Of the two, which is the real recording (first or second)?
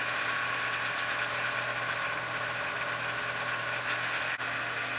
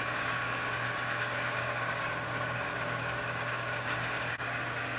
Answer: first